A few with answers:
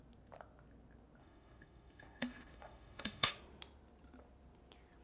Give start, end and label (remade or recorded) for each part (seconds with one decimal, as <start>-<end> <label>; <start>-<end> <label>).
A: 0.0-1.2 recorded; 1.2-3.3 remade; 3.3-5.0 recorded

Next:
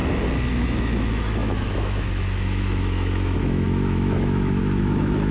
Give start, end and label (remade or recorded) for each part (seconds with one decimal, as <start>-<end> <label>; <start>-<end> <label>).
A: 0.0-0.5 recorded; 0.5-5.3 remade

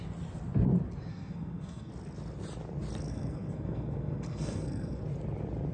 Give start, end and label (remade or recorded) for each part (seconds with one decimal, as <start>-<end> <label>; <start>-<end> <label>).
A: 0.0-1.1 recorded; 1.1-1.9 remade; 1.9-3.1 recorded; 3.1-5.0 remade; 5.0-5.7 recorded